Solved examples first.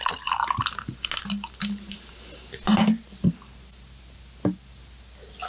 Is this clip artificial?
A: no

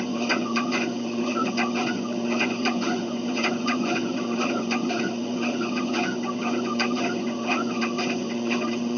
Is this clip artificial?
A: yes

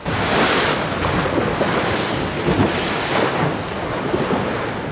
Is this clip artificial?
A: no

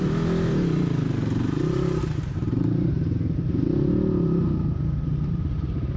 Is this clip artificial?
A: no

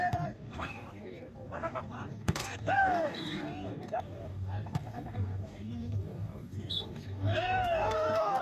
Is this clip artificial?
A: yes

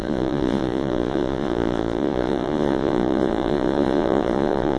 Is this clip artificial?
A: yes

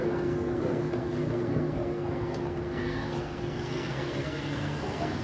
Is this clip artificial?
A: yes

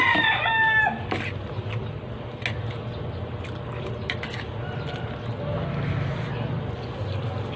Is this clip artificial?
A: no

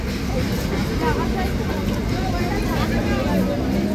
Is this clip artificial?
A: no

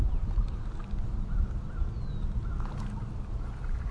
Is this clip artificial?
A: no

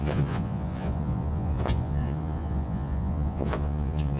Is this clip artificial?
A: yes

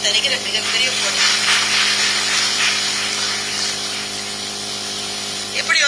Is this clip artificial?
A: no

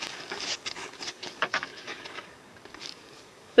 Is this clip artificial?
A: yes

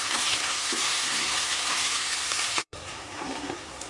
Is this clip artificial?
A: yes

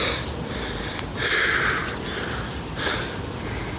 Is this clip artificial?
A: no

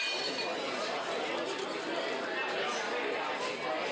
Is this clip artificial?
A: no